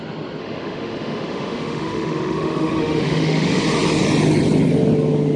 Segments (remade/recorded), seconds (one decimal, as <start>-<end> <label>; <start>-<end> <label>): 0.0-0.4 recorded; 0.4-3.6 remade; 3.6-5.4 recorded